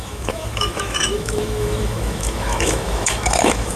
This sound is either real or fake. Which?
fake